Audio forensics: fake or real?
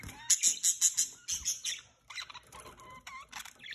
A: real